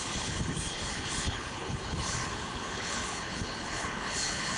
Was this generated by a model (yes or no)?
yes